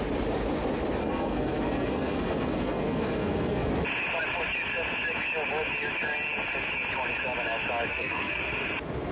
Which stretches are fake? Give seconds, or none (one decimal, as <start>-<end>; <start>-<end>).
1.0-3.7; 7.9-8.4